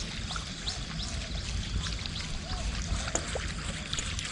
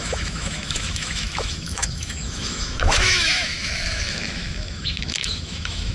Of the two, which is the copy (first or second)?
second